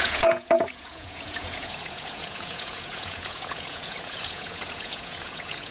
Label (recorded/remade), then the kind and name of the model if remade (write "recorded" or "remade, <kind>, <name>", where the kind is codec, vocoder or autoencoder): remade, vocoder, Vocos